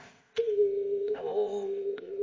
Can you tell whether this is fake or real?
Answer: fake